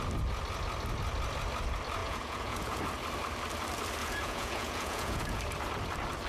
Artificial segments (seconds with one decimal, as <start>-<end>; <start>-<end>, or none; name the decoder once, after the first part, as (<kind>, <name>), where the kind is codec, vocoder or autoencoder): 2.0-2.8 (vocoder, Vocos); 4.0-5.4

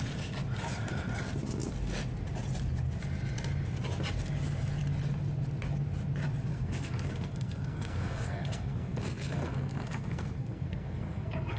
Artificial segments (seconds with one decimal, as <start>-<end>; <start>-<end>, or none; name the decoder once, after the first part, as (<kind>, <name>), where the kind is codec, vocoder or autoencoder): 6.5-11.6 (codec, SNAC)

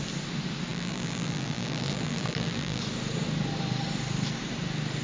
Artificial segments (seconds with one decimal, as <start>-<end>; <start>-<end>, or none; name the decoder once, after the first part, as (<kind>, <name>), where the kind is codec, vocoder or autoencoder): 0.7-2.8 (vocoder, BigVGAN v2)

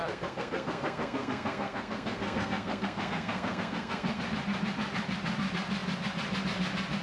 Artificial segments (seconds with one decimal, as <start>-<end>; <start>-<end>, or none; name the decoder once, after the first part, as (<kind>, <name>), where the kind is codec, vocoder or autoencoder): 0.0-4.2 (codec, SNAC)

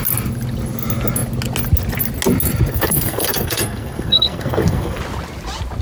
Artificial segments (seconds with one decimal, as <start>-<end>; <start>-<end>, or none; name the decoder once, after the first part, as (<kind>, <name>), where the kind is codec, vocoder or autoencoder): 2.7-5.0 (codec, SNAC)